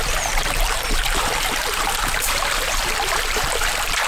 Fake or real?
fake